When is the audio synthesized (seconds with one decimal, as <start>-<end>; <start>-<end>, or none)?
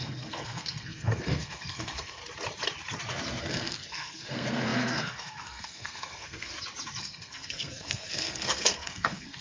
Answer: 0.0-2.2; 3.4-6.5; 7.0-9.4